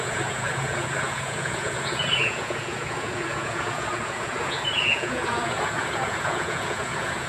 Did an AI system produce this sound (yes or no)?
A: yes